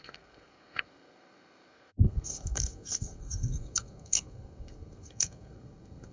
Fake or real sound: fake